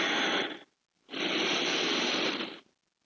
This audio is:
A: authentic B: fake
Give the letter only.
A